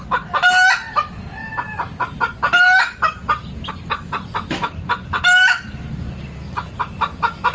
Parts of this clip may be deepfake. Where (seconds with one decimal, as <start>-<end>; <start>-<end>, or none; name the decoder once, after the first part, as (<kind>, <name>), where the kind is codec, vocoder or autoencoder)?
none

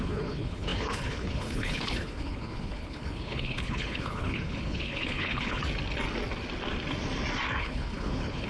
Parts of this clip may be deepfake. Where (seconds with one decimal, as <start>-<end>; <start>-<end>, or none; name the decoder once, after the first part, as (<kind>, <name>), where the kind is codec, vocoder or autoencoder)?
0.0-5.6 (codec, HILCodec); 7.6-8.5

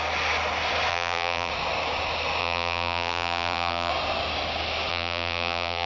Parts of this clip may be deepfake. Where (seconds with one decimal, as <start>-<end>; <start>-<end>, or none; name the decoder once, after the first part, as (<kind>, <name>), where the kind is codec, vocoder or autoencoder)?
0.9-1.5 (vocoder, BigVGAN v2); 2.4-3.9; 4.9-5.9

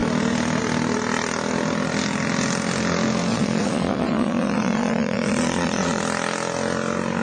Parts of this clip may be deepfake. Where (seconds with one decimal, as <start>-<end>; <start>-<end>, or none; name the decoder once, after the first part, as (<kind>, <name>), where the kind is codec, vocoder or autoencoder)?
3.3-6.0 (vocoder, Vocos)

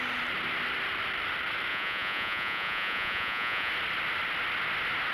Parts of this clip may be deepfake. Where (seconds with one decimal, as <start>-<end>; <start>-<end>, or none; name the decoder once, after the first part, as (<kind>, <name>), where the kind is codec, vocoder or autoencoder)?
1.7-3.7 (vocoder, Vocos)

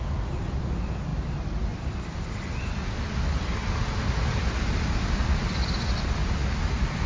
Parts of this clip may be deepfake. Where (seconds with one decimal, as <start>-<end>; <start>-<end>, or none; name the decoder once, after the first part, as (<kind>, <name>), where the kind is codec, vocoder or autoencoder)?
none